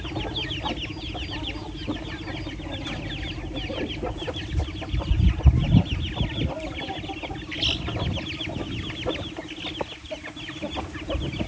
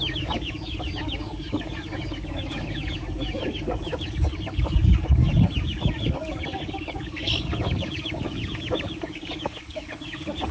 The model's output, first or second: second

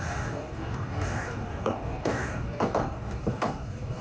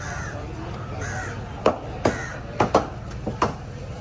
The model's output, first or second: first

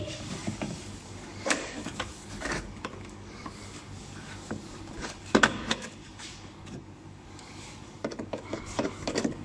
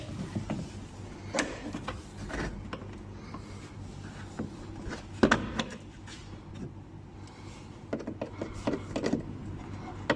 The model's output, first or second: first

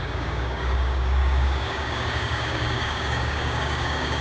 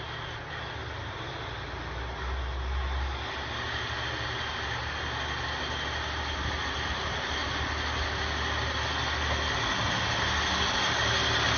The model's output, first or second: first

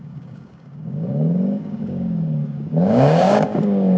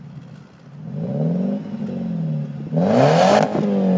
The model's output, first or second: first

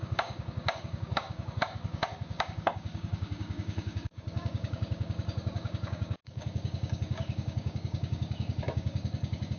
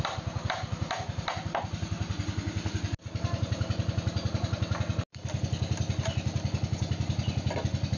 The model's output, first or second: first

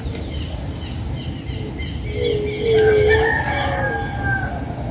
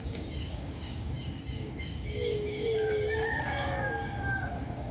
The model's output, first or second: second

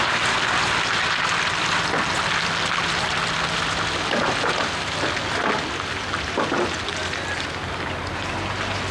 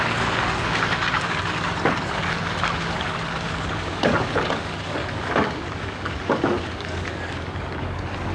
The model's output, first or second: second